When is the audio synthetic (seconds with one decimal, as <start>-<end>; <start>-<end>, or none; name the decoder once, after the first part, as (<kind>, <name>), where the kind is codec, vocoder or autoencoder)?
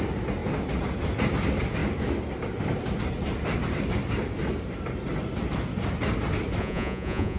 6.6-7.4 (vocoder, Vocos)